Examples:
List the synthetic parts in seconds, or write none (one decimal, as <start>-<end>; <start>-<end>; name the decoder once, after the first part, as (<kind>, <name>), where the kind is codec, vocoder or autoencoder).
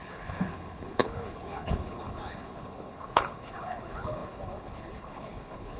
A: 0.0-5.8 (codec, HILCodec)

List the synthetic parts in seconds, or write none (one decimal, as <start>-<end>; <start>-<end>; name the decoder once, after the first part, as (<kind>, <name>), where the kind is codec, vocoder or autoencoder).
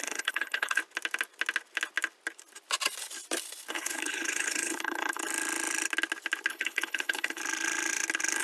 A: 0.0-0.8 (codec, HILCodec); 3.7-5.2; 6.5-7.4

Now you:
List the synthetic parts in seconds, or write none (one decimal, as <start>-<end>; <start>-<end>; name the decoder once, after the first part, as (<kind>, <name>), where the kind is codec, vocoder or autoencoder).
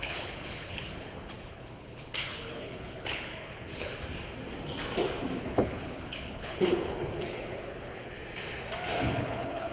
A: 0.0-3.9 (codec, HILCodec); 5.4-8.2; 9.0-9.7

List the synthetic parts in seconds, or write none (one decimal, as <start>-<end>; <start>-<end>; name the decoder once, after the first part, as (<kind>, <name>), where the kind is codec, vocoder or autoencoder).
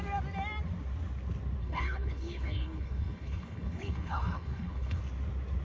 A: 1.6-5.0 (codec, HILCodec)